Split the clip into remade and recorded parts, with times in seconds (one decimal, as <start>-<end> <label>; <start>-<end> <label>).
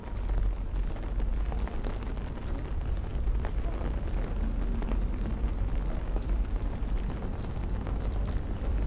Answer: 0.0-8.9 recorded